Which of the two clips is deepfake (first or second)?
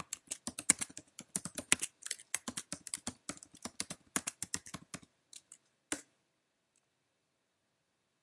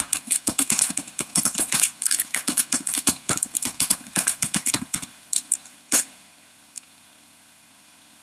second